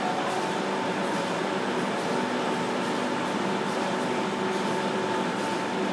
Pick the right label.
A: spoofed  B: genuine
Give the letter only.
B